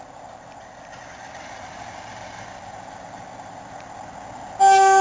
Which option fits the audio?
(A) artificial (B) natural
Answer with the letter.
B